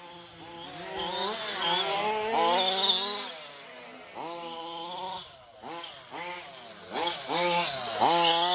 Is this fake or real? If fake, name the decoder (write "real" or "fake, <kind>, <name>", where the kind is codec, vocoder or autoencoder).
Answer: real